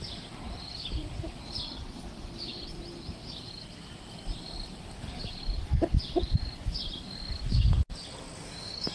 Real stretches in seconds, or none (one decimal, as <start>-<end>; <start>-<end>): 0.0-2.5; 6.4-8.9